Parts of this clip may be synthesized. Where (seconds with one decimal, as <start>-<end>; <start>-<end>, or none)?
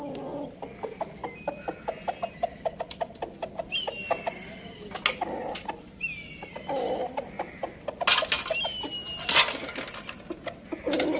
none